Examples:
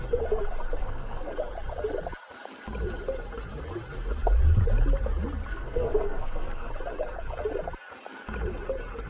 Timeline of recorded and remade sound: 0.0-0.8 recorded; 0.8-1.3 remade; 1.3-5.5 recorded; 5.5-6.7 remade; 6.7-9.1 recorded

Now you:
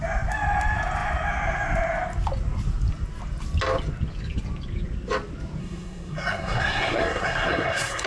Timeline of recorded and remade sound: 0.0-5.6 recorded; 5.6-8.1 remade

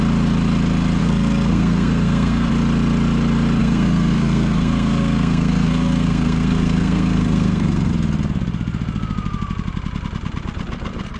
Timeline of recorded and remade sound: 0.0-1.0 recorded; 1.0-2.5 remade; 2.5-3.6 recorded; 3.6-7.9 remade; 7.9-11.2 recorded

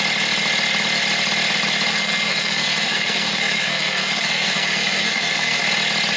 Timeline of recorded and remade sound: 0.0-1.9 recorded; 1.9-5.6 remade; 5.6-6.2 recorded

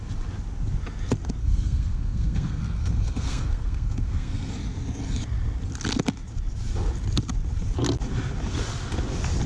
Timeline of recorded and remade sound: 0.0-1.4 recorded; 1.4-4.5 remade; 4.5-9.5 recorded

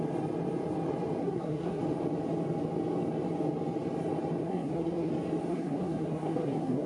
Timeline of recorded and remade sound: 0.0-1.2 recorded; 1.2-1.8 remade; 1.8-4.4 recorded; 4.4-5.1 remade; 5.1-5.5 recorded; 5.5-6.9 remade

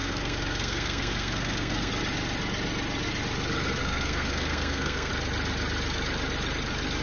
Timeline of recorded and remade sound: 0.0-1.9 remade; 1.9-3.8 recorded; 3.8-5.1 remade; 5.1-7.0 recorded